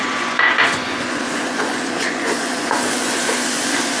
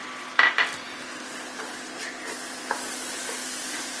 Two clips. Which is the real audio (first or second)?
second